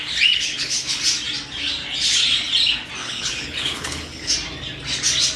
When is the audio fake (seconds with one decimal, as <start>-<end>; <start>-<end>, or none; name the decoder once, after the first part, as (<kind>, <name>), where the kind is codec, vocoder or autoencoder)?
0.0-1.0 (codec, HILCodec); 3.0-4.3